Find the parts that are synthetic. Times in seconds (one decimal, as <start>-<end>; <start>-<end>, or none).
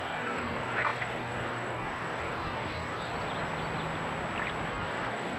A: 0.0-3.1; 4.7-5.4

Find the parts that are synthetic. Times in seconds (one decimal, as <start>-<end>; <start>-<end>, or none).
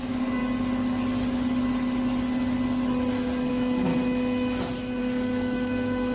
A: 0.0-0.4; 3.5-3.9; 5.0-6.1